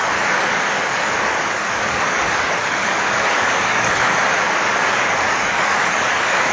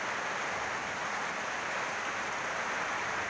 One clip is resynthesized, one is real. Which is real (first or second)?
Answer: second